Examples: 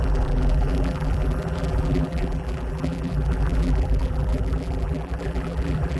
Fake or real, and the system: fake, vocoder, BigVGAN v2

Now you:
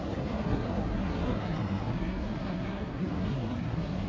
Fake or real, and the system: fake, codec, SNAC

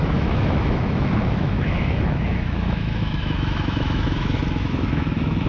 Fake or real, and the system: fake, autoencoder, DAC-VAE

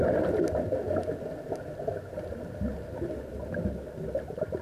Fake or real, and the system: real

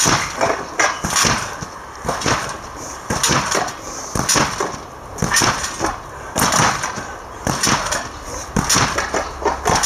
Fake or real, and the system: real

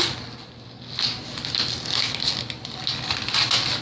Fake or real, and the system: real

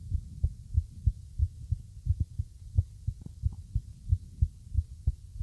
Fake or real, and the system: real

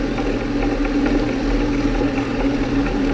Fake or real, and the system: real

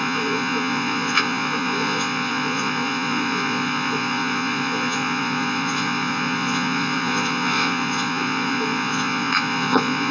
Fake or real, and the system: fake, vocoder, Vocos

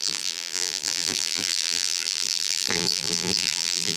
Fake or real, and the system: fake, vocoder, BigVGAN v2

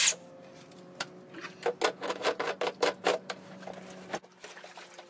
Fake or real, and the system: real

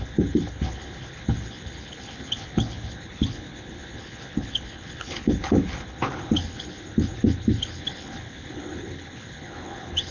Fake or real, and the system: fake, codec, HILCodec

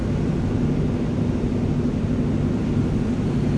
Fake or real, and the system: real